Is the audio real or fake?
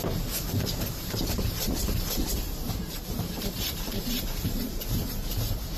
fake